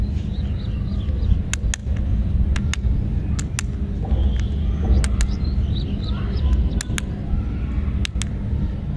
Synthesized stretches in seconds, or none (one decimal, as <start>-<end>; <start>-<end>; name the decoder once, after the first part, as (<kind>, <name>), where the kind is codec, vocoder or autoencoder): none